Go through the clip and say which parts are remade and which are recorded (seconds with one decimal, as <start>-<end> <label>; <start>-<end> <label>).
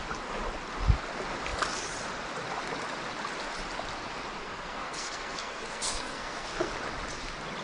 0.0-4.4 recorded; 4.4-6.7 remade; 6.7-7.6 recorded